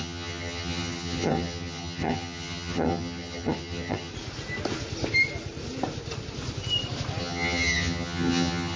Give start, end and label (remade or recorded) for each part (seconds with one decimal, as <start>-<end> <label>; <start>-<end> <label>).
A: 0.0-4.1 remade; 4.1-7.2 recorded; 7.2-8.8 remade

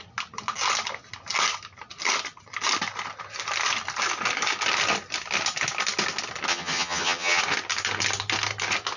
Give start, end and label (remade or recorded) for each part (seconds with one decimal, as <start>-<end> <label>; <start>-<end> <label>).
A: 0.0-6.5 recorded; 6.5-7.4 remade; 7.4-9.0 recorded

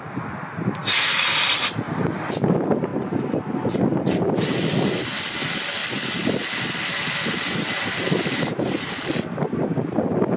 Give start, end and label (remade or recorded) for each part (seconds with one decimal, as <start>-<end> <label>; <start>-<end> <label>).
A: 0.0-10.4 recorded

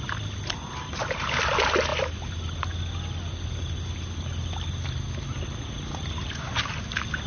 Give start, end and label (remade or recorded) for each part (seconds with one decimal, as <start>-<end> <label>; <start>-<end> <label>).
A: 0.0-7.3 recorded

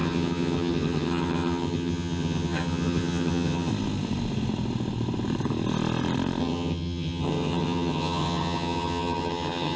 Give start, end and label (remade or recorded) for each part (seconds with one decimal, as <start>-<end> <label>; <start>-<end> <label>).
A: 0.0-3.7 remade; 3.7-6.4 recorded; 6.4-9.8 remade

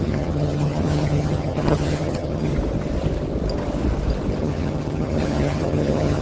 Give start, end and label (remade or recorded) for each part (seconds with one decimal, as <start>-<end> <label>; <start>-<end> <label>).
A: 0.0-2.5 remade; 2.5-4.4 recorded; 4.4-6.2 remade

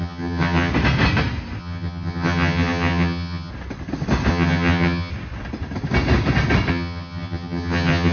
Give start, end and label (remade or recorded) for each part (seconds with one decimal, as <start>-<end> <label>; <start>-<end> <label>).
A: 0.0-0.7 remade; 0.7-1.6 recorded; 1.6-3.5 remade; 3.5-4.3 recorded; 4.3-5.1 remade; 5.1-6.7 recorded; 6.7-8.1 remade

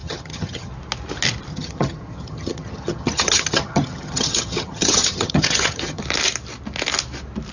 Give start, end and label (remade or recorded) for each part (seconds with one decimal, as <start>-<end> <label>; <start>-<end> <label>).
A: 0.0-0.7 remade; 0.7-1.5 recorded; 1.5-6.0 remade; 6.0-7.5 recorded